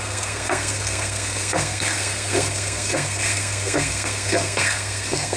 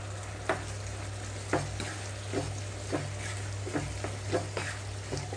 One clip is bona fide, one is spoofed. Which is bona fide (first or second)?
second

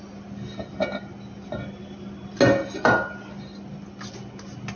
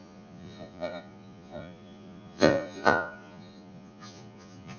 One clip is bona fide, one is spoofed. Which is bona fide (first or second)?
first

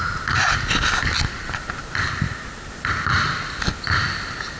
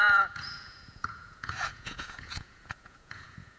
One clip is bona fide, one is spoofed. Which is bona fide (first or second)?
first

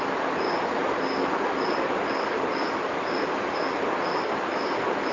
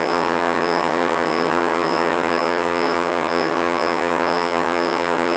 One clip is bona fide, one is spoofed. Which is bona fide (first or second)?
first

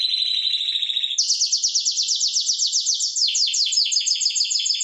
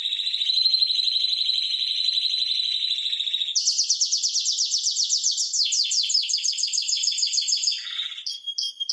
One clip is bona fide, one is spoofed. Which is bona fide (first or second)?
first